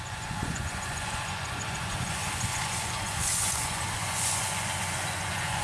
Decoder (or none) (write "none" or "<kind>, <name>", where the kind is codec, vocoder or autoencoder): vocoder, Vocos